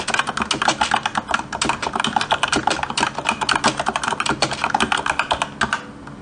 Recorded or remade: recorded